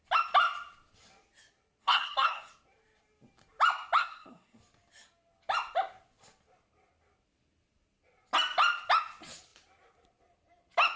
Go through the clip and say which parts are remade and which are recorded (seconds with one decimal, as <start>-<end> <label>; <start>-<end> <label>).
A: 0.0-1.8 recorded; 1.8-2.5 remade; 2.5-4.0 recorded; 4.0-4.6 remade; 4.6-11.0 recorded